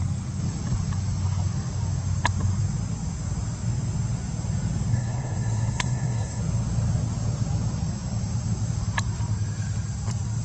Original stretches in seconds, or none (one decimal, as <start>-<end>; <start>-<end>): 0.0-4.9; 6.4-10.4